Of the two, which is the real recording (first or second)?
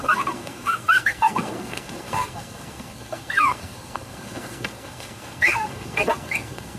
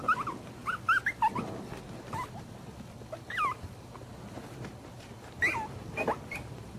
second